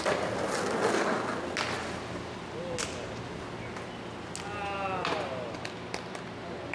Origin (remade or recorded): recorded